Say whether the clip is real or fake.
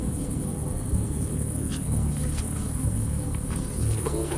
fake